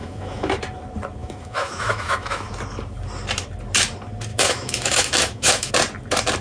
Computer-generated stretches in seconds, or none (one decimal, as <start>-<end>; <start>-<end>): 0.0-0.5; 1.2-2.5; 4.3-5.7